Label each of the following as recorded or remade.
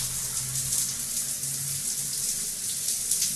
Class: recorded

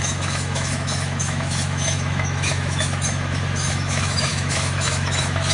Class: remade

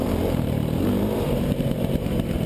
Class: remade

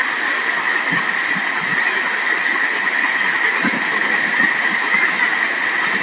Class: recorded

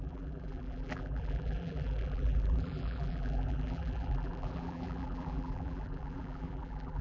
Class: remade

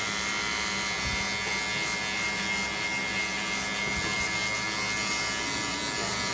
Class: recorded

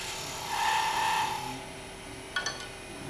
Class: recorded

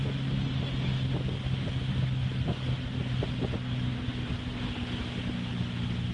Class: recorded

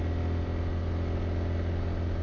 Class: recorded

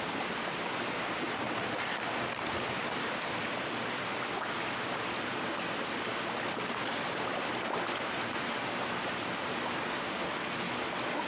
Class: remade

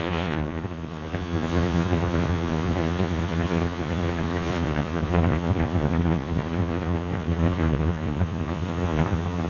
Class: remade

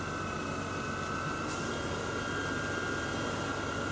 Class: recorded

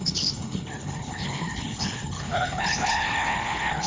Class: remade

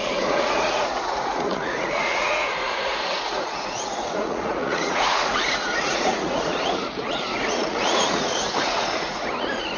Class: remade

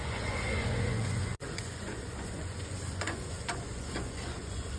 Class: remade